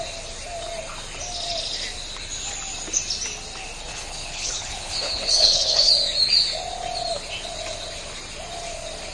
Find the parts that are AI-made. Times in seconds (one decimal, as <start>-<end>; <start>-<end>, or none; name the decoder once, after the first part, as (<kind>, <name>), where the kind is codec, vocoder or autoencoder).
3.9-5.9 (codec, HILCodec)